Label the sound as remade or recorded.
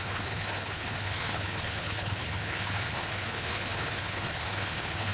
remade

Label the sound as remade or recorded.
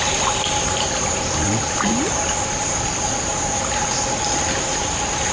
recorded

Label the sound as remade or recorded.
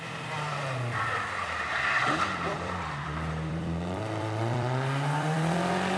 remade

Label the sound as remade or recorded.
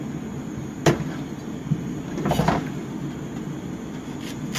recorded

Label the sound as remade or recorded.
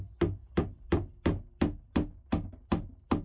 recorded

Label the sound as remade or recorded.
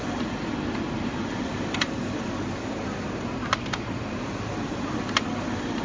remade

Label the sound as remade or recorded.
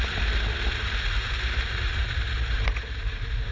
recorded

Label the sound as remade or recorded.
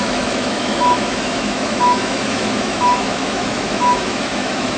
remade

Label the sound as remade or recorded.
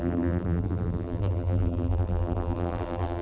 remade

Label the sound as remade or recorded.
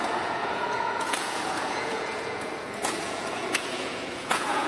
remade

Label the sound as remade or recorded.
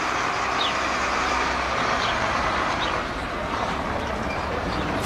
remade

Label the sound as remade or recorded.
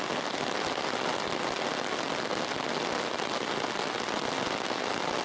recorded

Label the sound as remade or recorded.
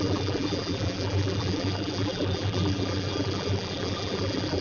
remade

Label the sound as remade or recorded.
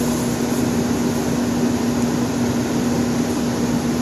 recorded